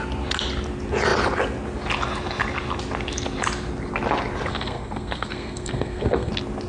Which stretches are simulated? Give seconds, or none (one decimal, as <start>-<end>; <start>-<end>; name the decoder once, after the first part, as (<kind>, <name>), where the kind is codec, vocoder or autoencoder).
4.5-6.3 (codec, SNAC)